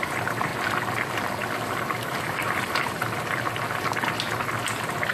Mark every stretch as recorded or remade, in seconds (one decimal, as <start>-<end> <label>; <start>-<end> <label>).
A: 0.0-0.5 remade; 0.5-2.2 recorded; 2.2-3.0 remade; 3.0-5.1 recorded